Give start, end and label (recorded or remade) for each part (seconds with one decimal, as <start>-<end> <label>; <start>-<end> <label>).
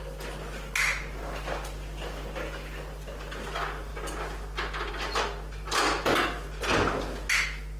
0.0-7.8 recorded